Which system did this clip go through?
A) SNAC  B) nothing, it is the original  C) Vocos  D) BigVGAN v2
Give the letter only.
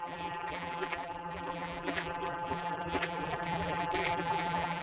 D